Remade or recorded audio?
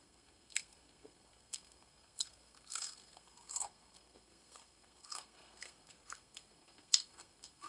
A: remade